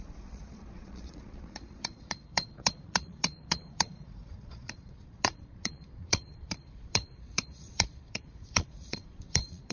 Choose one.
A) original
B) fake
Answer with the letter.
B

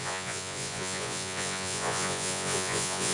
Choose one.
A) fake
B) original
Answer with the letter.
A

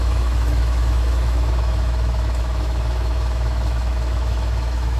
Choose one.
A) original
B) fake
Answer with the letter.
B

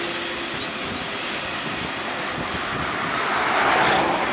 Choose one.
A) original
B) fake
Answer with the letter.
A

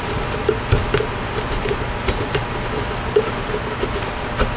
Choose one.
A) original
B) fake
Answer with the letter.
A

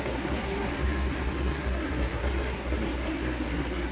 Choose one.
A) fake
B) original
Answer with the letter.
A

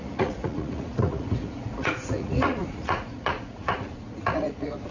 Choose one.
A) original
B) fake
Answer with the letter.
B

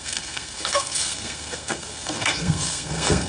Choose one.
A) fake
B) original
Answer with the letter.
A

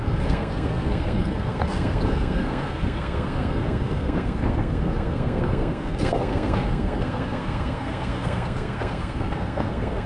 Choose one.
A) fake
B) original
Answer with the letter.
A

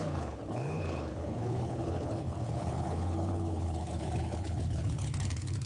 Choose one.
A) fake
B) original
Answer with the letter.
A